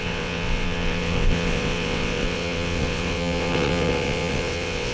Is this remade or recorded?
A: remade